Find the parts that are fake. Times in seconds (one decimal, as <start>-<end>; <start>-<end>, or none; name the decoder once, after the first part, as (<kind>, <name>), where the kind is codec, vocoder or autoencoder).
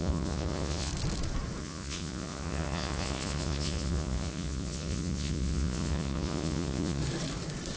0.0-0.9 (vocoder, Vocos); 1.6-7.0